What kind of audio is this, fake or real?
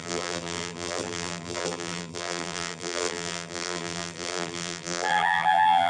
fake